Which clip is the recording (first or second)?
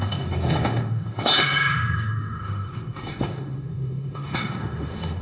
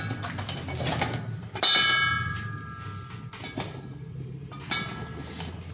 second